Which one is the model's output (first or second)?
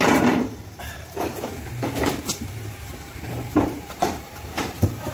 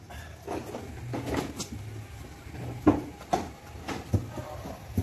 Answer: first